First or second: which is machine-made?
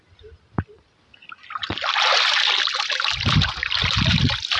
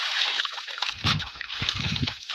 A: second